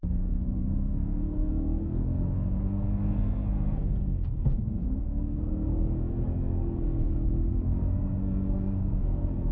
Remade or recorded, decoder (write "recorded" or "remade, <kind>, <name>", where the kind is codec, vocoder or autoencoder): remade, codec, SNAC